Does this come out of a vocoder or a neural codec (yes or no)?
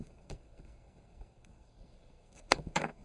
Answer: yes